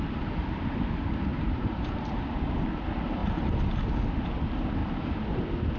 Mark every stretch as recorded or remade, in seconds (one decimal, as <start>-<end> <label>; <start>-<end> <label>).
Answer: 0.0-1.3 recorded; 1.3-2.3 remade; 2.3-3.2 recorded; 3.2-3.8 remade; 3.8-5.8 recorded